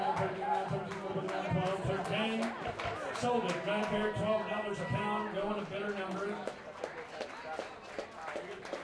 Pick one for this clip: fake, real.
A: real